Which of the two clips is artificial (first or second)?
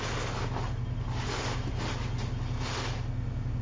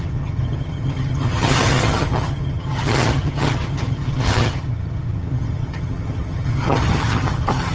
second